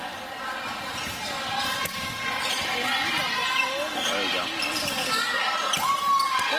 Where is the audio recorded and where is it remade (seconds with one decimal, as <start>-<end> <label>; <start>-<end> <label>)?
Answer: 0.0-6.6 recorded